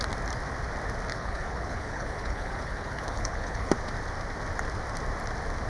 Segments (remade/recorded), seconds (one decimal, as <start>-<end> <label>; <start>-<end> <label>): 0.0-1.1 recorded; 1.1-3.7 remade; 3.7-5.7 recorded